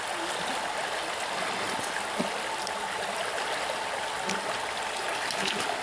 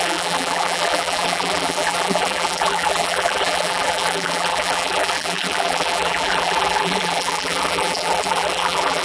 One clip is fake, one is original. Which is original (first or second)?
first